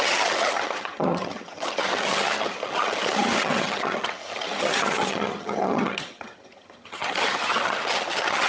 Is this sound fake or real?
fake